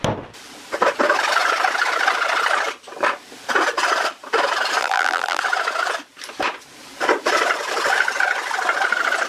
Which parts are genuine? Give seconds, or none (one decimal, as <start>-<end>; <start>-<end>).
0.0-4.8; 5.4-9.3